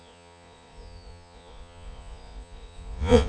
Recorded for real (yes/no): no